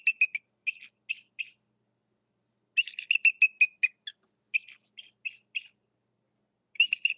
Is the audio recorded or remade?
recorded